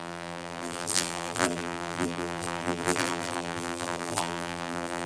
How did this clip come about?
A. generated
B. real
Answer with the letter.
A